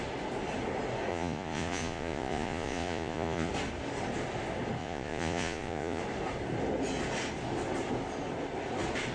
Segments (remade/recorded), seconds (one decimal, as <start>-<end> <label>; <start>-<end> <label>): 0.0-1.1 recorded; 1.1-3.5 remade; 3.5-4.8 recorded; 4.8-6.0 remade; 6.0-9.1 recorded